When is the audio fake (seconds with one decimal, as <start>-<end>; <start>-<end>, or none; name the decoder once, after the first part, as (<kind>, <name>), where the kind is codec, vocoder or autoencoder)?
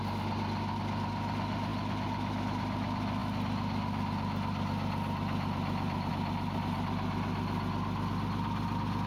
none